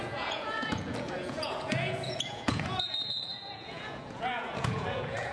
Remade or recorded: remade